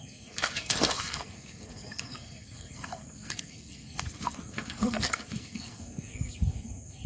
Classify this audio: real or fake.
fake